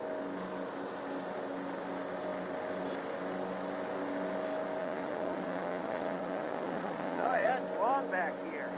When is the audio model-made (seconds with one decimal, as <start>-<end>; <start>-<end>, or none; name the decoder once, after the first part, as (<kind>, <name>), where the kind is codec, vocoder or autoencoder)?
4.8-7.5 (vocoder, Vocos)